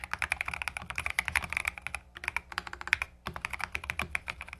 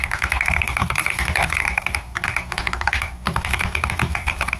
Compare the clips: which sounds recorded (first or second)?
first